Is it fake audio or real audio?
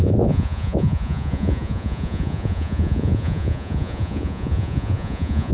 fake